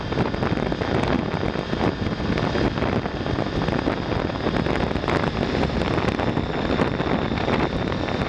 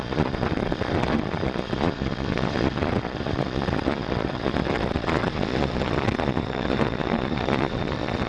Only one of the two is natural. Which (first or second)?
first